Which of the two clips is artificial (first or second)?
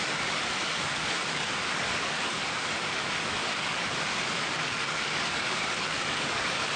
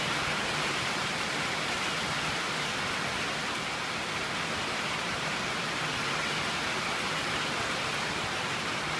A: first